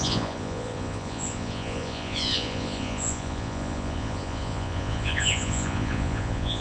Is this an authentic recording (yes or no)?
no